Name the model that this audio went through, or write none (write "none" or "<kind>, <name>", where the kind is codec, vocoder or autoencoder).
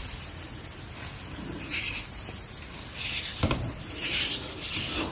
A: vocoder, BigVGAN v2